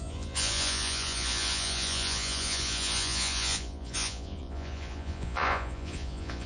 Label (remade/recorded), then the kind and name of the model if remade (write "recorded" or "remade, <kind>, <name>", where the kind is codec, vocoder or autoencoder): remade, vocoder, Vocos